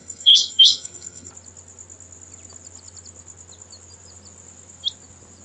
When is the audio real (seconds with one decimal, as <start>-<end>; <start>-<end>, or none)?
1.3-5.4